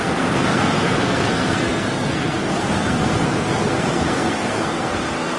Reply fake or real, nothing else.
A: fake